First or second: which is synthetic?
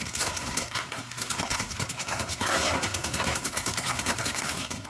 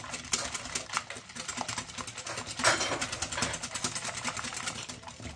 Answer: first